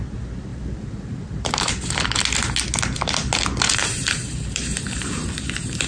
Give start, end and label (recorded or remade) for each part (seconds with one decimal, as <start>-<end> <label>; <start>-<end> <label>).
0.0-0.5 recorded; 0.5-1.9 remade; 1.9-3.8 recorded; 3.8-5.9 remade

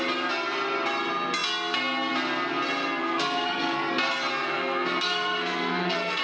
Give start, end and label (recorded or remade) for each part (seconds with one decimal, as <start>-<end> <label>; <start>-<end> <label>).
0.0-3.0 recorded; 3.0-3.9 remade; 3.9-4.3 recorded; 4.3-6.2 remade

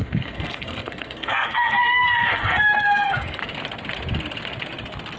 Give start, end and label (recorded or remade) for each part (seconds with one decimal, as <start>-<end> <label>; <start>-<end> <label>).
0.0-3.4 remade; 3.4-5.2 recorded

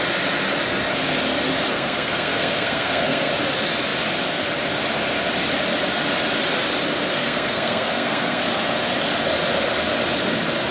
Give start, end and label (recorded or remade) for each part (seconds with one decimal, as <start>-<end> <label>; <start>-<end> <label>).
0.0-1.7 recorded; 1.7-3.3 remade; 3.3-7.1 recorded; 7.1-8.4 remade; 8.4-10.7 recorded